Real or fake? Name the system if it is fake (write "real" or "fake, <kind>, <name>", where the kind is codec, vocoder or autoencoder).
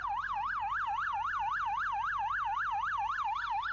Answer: real